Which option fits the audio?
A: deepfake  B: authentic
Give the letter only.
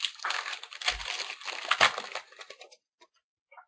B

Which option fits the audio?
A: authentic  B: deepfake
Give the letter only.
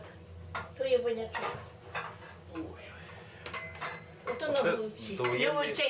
A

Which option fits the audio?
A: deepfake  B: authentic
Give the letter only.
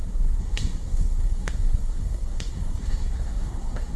A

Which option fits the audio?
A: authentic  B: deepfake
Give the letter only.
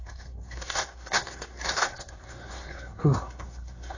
B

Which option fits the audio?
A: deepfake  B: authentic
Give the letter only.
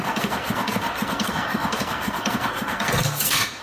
A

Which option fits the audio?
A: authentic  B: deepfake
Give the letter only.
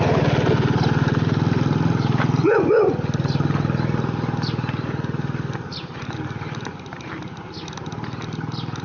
A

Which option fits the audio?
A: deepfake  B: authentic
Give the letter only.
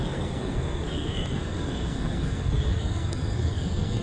A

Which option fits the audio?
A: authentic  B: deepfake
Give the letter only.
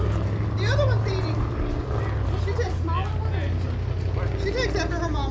A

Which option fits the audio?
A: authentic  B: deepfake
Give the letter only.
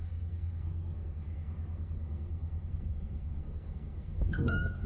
B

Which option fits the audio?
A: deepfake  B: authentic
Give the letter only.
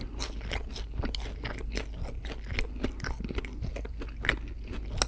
B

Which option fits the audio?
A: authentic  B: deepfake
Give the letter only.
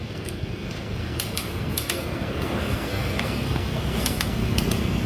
B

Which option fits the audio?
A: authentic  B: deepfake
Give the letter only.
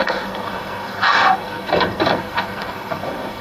B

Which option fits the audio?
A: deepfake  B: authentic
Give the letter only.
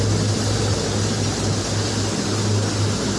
B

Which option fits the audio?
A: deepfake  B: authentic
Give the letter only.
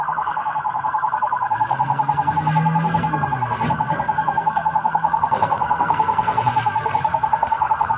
A